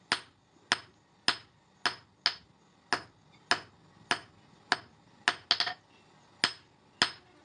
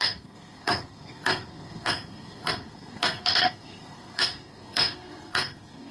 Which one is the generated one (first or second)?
second